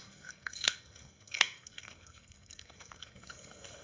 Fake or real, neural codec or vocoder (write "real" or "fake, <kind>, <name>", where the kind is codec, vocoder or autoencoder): fake, codec, SNAC